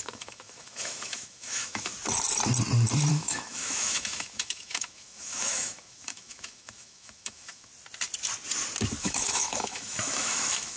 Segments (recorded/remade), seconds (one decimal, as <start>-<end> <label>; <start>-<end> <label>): 0.0-1.9 remade; 1.9-3.1 recorded; 3.1-7.7 remade; 7.7-9.0 recorded; 9.0-10.8 remade